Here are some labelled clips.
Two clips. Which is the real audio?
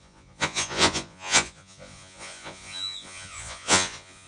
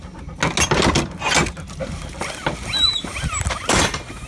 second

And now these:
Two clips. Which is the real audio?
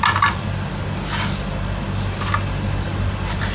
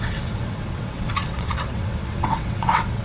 first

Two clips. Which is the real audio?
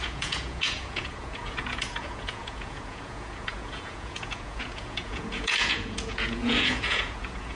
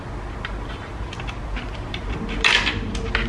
second